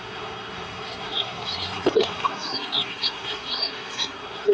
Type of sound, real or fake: fake